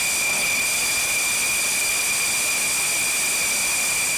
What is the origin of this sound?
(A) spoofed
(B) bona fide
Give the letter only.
B